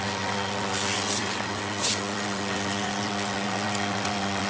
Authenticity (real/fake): fake